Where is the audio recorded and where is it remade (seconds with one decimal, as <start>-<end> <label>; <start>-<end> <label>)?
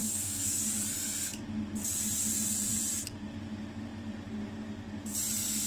0.0-0.6 remade; 0.6-5.7 recorded